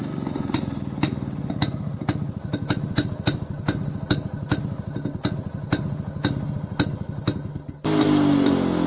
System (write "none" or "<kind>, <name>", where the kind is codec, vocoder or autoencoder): none